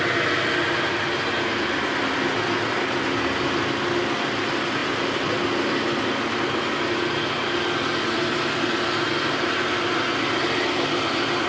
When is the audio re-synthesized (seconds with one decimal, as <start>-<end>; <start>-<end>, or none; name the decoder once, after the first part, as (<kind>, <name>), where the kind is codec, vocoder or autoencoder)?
none